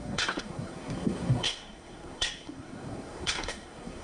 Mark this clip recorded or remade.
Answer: remade